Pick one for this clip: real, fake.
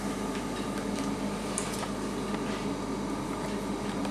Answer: real